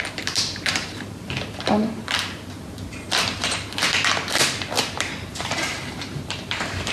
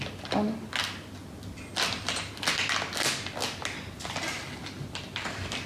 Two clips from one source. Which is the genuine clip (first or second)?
second